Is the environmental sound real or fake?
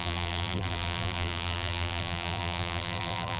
fake